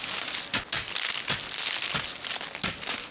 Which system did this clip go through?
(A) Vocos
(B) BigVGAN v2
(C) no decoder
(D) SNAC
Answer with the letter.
C